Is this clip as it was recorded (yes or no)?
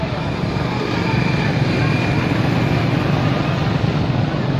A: yes